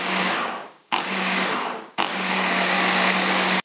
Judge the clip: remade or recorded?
remade